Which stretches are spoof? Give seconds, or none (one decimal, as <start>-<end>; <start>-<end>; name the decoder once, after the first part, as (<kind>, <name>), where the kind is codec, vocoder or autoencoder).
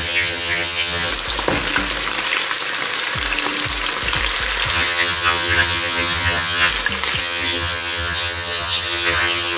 0.0-1.1 (vocoder, HiFi-GAN); 4.7-6.7; 7.2-9.6